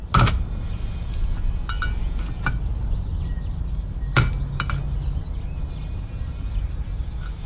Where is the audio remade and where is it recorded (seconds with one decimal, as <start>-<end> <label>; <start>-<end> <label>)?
0.0-7.5 recorded